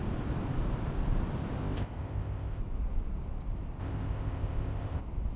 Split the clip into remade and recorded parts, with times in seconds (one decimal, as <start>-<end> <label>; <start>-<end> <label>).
0.0-1.6 recorded; 1.6-2.6 remade; 2.6-3.8 recorded; 3.8-5.0 remade; 5.0-5.4 recorded